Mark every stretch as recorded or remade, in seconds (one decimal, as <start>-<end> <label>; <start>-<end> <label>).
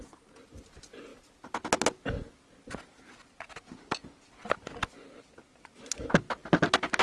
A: 0.0-7.0 recorded